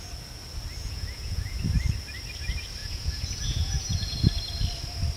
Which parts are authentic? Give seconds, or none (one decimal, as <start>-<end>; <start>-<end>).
0.0-0.8; 1.6-2.8; 4.2-5.2